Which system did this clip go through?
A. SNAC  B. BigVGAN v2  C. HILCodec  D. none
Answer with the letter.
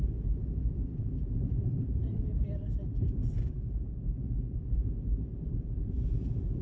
B